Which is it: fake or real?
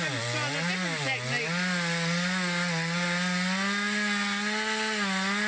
real